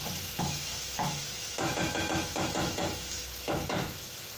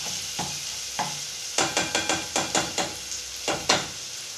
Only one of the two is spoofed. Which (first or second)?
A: first